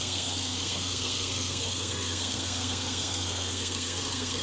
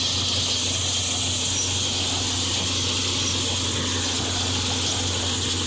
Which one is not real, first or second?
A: first